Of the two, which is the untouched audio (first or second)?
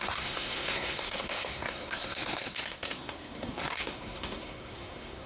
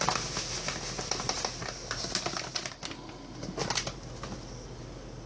second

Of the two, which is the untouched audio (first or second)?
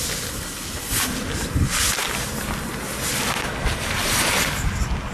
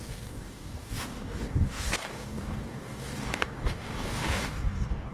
first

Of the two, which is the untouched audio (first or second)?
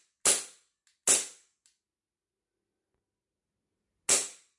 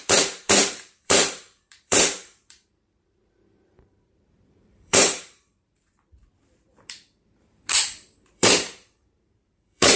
first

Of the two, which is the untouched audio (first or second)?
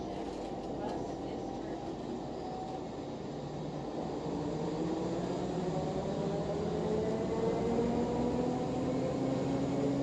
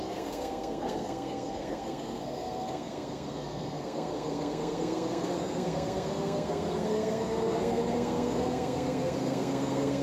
first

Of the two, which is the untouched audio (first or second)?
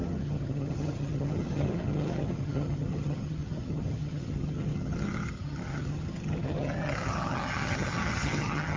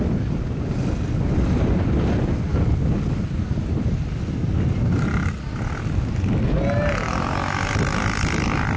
second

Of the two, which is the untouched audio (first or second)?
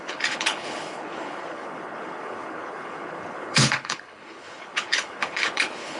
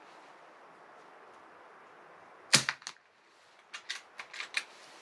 second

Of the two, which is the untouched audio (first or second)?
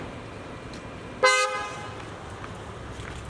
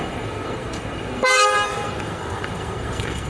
first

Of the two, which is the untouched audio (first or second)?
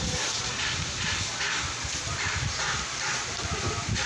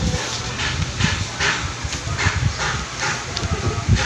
second